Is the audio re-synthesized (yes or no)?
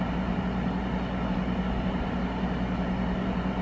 no